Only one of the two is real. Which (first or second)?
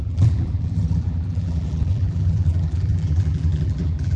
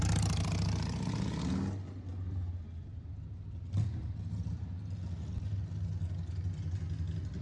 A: second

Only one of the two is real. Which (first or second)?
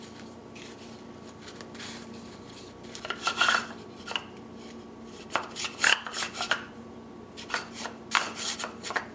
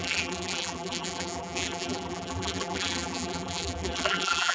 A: first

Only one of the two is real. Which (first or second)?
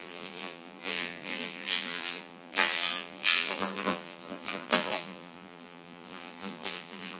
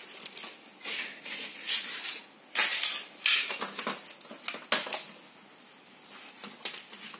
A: second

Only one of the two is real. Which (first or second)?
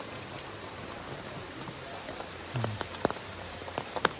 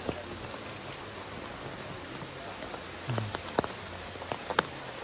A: second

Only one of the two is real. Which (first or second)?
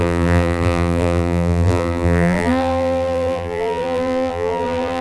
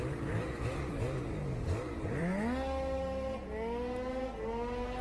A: second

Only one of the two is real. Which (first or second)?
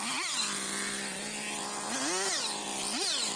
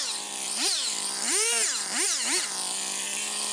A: first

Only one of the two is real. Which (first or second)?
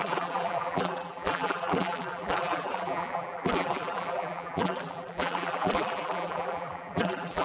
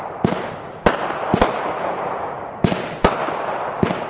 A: second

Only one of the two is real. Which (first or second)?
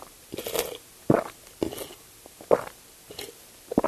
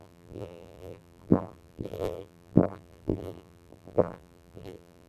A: first